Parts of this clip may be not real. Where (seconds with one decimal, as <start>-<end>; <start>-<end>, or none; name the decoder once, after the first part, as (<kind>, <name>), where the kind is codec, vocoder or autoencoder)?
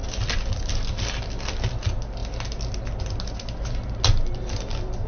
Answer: none